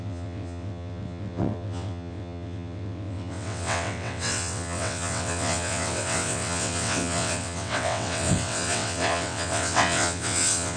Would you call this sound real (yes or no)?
no